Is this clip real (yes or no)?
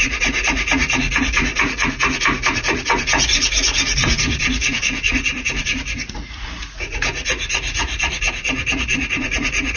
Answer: no